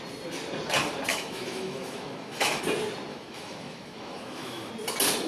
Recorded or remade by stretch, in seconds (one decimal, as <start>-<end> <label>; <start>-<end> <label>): 0.0-1.1 recorded; 1.1-2.6 remade; 2.6-3.1 recorded; 3.1-4.7 remade; 4.7-5.3 recorded